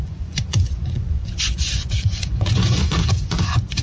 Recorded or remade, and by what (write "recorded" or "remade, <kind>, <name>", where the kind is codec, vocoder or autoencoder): remade, vocoder, Vocos